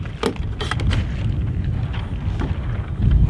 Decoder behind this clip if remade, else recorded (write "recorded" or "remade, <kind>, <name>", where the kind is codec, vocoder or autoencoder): recorded